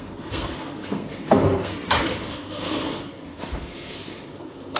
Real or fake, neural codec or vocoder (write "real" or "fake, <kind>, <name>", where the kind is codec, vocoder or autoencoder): fake, codec, SNAC